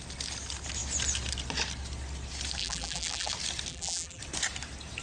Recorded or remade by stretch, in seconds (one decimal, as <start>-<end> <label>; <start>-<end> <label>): 0.0-2.6 recorded; 2.6-3.3 remade; 3.3-3.7 recorded; 3.7-4.2 remade; 4.2-5.0 recorded